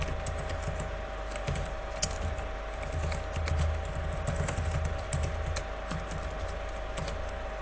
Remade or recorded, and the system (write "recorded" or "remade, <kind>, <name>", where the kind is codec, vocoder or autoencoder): recorded